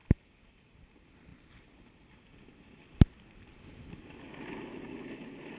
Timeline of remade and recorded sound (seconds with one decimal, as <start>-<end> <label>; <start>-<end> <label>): 0.0-5.6 recorded